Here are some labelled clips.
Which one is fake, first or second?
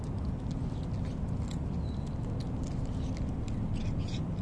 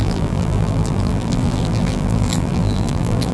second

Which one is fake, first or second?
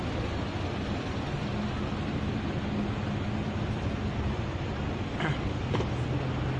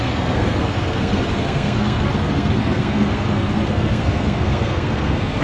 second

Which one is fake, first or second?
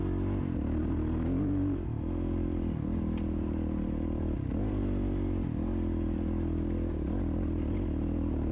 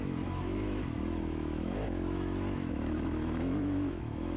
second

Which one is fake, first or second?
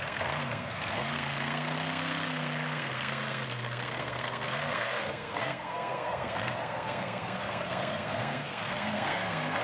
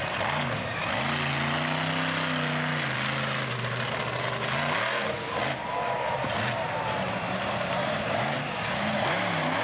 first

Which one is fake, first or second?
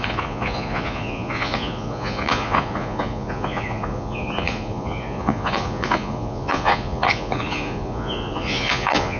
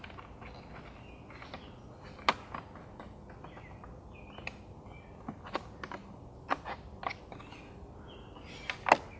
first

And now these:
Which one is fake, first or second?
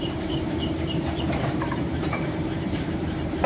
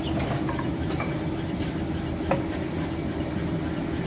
first